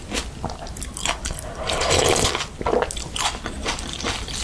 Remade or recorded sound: recorded